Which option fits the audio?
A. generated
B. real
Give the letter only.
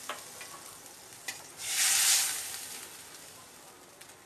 B